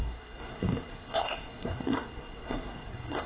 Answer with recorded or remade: remade